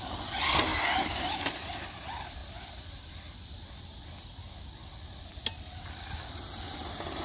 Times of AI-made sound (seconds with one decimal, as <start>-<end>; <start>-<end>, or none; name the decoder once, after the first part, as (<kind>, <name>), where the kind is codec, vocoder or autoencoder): 0.7-1.2 (vocoder, BigVGAN v2)